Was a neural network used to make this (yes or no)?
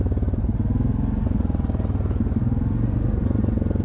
no